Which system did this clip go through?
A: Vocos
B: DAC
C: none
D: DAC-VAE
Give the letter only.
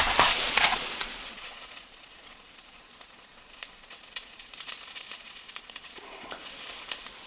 A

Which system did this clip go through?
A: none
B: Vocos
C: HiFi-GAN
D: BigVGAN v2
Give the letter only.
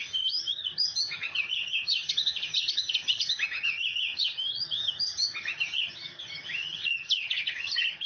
C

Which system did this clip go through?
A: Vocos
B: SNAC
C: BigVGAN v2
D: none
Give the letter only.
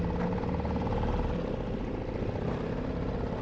D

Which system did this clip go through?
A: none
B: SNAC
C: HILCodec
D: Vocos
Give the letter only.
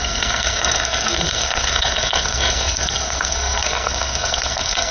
B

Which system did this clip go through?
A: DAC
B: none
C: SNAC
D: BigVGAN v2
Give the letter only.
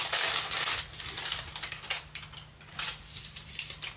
B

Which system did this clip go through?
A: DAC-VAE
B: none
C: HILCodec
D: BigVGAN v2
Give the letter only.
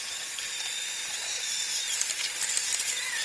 B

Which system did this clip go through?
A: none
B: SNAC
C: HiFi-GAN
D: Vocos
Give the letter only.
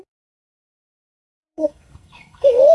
B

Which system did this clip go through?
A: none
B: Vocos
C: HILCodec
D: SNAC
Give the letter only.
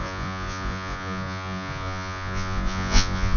B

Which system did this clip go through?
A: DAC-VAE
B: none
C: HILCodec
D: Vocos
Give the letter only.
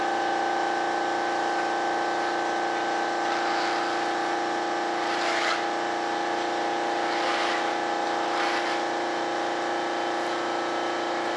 B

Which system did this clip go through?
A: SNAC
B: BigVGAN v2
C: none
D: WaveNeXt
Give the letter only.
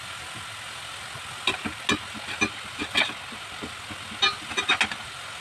C